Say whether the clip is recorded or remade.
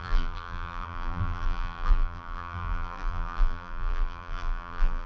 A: remade